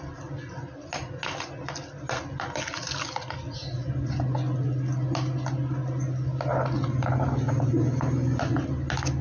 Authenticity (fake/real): real